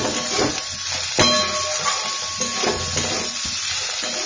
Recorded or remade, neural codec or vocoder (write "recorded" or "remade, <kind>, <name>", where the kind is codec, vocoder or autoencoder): recorded